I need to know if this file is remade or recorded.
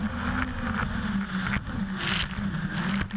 recorded